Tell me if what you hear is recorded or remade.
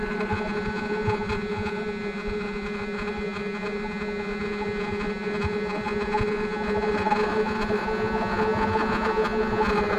remade